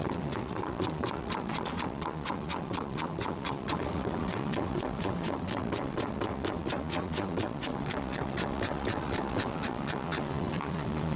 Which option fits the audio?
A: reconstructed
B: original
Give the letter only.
A